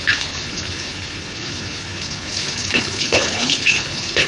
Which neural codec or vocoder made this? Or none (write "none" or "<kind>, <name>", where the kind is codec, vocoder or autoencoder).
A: codec, HILCodec